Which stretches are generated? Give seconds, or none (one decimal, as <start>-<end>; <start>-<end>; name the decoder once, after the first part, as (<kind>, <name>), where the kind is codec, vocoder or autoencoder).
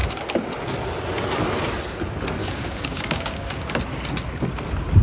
2.4-3.8 (codec, DAC)